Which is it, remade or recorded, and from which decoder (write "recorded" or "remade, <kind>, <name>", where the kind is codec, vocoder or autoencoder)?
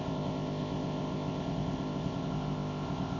remade, codec, ZipCodec